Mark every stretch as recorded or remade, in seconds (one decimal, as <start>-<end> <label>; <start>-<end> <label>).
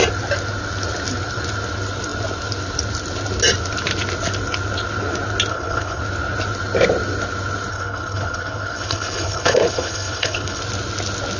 0.0-5.5 recorded; 5.5-6.0 remade; 6.0-7.7 recorded; 7.7-10.6 remade; 10.6-11.4 recorded